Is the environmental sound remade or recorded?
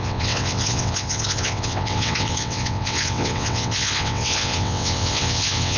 remade